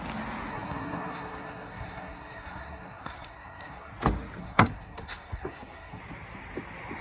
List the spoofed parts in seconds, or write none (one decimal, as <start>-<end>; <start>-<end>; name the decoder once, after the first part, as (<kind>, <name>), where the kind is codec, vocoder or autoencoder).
0.5-3.9 (codec, SNAC); 4.4-6.0